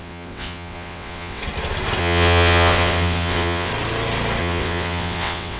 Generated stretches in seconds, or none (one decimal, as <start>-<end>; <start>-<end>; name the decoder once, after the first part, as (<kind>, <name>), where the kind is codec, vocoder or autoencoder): 0.0-1.4 (vocoder, WaveNeXt); 2.0-3.7; 4.4-5.6

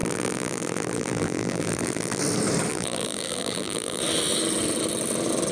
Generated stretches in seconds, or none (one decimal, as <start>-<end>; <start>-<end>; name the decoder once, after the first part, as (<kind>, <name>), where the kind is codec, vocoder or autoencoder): 0.0-2.2 (vocoder, BigVGAN v2); 2.7-4.0

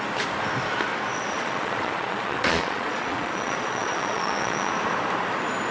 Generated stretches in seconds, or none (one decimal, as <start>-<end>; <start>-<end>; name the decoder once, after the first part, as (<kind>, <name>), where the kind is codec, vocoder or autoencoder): 1.3-4.7 (vocoder, Vocos)